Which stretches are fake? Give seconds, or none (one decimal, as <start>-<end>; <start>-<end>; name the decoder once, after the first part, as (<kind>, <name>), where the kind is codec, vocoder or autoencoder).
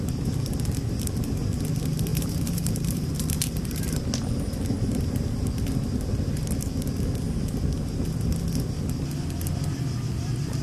2.1-4.0 (vocoder, BigVGAN v2)